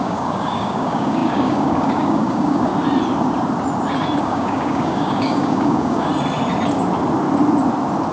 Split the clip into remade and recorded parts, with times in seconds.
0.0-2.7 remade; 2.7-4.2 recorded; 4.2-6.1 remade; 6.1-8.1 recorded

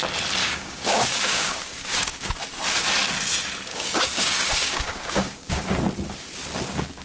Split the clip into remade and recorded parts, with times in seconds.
0.0-0.4 recorded; 0.4-2.2 remade; 2.2-3.7 recorded; 3.7-5.6 remade; 5.6-7.0 recorded

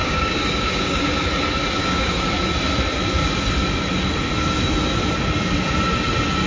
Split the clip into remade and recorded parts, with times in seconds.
0.0-1.0 remade; 1.0-1.8 recorded; 1.8-2.3 remade; 2.3-6.5 recorded

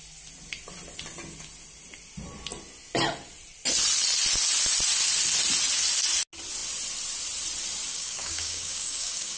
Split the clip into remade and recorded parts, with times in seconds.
0.0-7.9 recorded; 7.9-9.4 remade

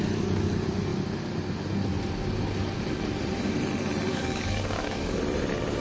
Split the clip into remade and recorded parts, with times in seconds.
0.0-4.1 recorded; 4.1-5.2 remade; 5.2-5.8 recorded